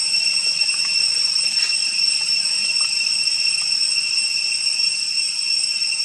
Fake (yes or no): no